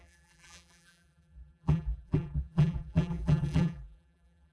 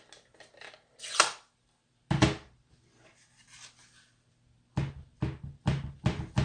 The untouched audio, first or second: second